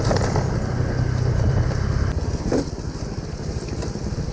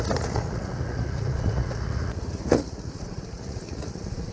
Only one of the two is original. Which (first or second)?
first